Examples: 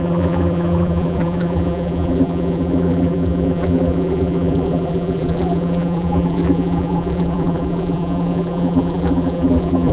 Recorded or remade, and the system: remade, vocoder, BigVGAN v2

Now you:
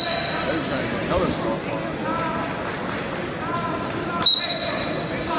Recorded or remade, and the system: recorded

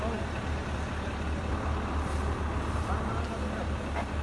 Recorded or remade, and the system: recorded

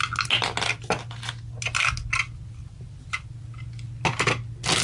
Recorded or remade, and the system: recorded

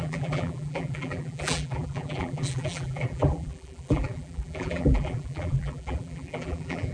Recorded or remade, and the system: remade, vocoder, BigVGAN v2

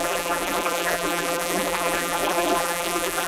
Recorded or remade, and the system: remade, vocoder, BigVGAN v2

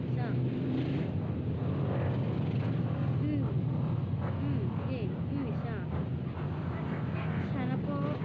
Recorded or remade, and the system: recorded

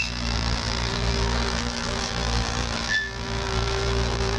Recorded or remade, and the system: remade, vocoder, BigVGAN v2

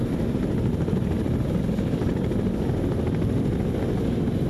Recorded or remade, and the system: recorded